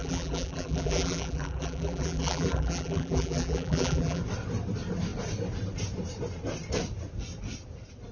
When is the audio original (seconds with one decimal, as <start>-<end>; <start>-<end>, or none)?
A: 4.2-8.1